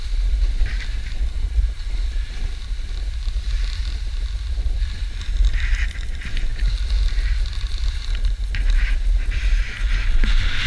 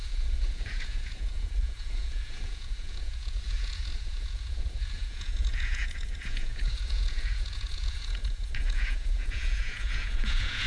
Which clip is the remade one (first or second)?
second